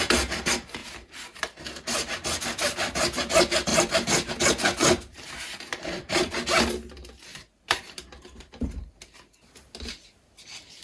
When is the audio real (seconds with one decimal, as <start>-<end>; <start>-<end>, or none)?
0.0-0.8; 1.6-3.7; 4.3-4.8; 6.3-7.3; 9.0-10.8